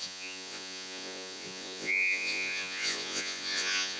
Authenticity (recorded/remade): remade